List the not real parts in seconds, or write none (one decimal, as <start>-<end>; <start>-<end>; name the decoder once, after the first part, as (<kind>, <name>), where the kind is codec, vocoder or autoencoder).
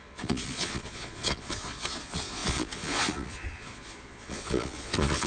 0.0-5.3 (vocoder, Vocos)